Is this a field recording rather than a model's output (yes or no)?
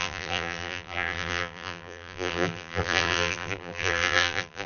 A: no